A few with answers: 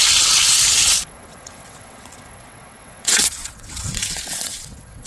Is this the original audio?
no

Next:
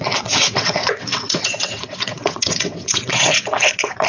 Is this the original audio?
no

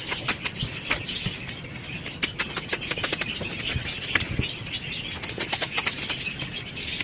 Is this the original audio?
yes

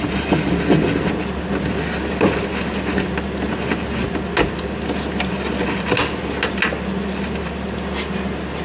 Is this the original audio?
yes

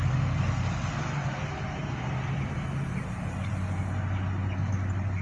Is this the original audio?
yes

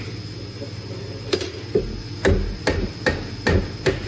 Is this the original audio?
yes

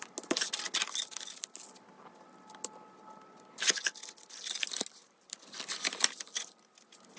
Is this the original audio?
yes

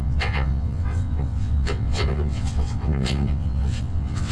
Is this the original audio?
no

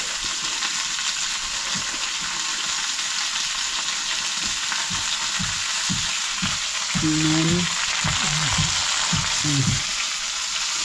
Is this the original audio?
yes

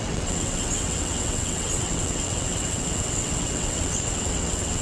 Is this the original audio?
no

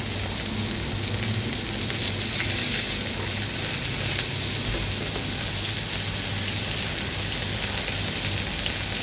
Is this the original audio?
yes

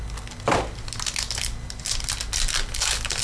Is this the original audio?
yes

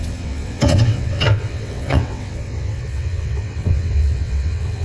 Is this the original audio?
no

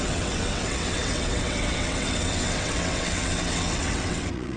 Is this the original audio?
no